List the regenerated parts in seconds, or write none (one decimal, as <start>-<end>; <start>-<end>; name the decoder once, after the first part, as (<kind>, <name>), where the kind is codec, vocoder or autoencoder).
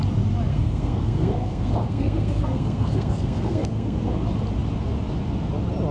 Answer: 0.5-4.0 (codec, SNAC)